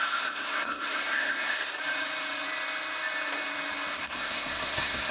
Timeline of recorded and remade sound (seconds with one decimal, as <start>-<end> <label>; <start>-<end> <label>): 0.0-1.7 remade; 1.7-3.9 recorded; 3.9-5.1 remade